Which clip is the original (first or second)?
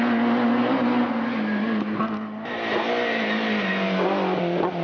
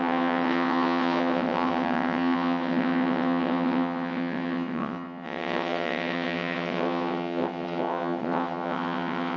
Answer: first